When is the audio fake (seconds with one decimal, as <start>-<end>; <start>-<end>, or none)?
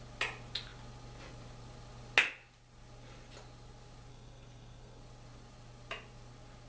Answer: 4.1-5.0